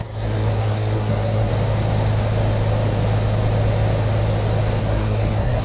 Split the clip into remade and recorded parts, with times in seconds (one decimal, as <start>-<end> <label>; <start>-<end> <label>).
0.0-1.5 remade; 1.5-4.8 recorded; 4.8-5.6 remade